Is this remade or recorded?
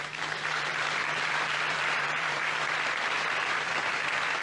remade